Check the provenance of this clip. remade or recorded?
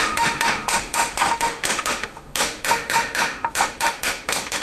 remade